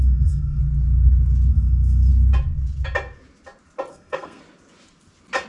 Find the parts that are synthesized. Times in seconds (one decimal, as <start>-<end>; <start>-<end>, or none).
0.0-0.6; 1.5-2.1; 3.9-4.4